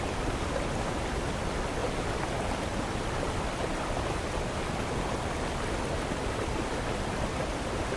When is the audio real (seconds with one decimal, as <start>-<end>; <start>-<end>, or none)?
0.0-1.8; 3.4-8.0